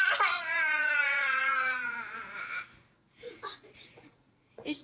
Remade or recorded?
remade